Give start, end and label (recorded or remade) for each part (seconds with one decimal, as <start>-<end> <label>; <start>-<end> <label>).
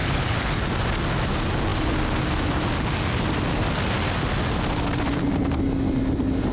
0.0-0.6 remade; 0.6-6.5 recorded